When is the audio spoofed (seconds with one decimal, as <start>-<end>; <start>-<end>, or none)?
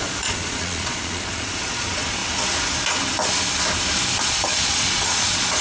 0.0-2.2; 4.2-5.6